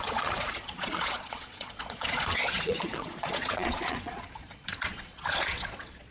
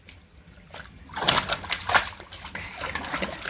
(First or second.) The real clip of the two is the second